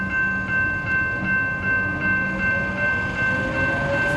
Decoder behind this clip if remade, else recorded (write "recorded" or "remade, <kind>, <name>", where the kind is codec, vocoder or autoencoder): recorded